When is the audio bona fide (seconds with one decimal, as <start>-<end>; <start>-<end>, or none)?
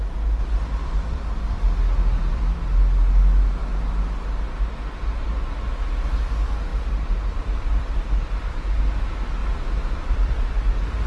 0.0-0.8; 2.3-6.7; 9.0-9.4; 10.5-11.1